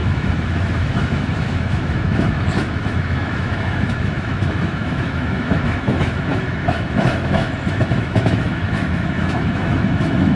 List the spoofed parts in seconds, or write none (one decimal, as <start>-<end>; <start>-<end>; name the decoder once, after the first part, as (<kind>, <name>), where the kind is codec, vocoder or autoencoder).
0.0-10.4 (autoencoder, DAC-VAE)